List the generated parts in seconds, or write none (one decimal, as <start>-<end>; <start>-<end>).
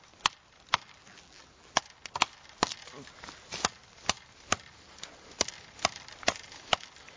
1.0-1.8